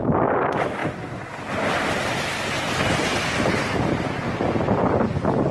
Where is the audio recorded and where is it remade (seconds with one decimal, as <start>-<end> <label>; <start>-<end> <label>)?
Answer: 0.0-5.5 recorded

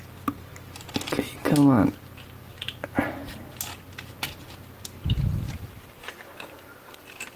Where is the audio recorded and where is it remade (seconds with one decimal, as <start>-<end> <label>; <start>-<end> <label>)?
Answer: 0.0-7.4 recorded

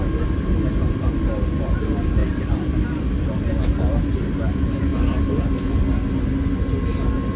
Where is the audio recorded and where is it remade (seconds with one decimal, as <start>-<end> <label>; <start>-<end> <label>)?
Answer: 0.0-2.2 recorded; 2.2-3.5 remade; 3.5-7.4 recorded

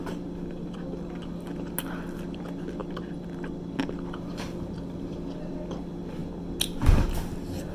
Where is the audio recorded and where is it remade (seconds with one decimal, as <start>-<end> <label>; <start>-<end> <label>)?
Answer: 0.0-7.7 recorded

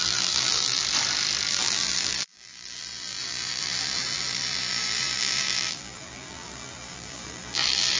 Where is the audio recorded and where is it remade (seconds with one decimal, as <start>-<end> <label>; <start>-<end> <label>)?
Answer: 0.0-0.8 remade; 0.8-1.5 recorded; 1.5-8.0 remade

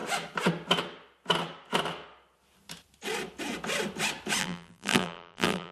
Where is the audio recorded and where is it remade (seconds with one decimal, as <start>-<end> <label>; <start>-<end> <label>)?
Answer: 0.0-4.4 recorded; 4.4-5.7 remade

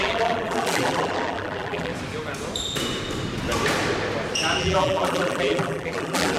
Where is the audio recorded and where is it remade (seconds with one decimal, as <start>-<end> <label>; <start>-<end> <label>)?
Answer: 0.0-1.9 remade; 1.9-4.6 recorded; 4.6-6.4 remade